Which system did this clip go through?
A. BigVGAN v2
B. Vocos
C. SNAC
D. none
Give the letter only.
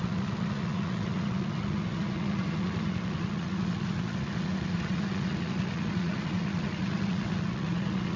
B